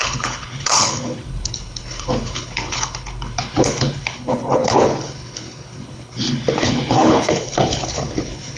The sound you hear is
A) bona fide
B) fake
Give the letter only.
B